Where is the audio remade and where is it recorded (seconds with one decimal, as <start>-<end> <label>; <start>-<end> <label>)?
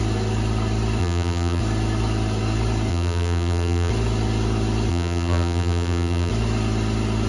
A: 0.0-1.0 recorded; 1.0-1.6 remade; 1.6-2.9 recorded; 2.9-3.9 remade; 3.9-4.9 recorded; 4.9-6.3 remade; 6.3-7.3 recorded